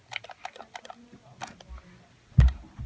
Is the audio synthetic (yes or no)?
no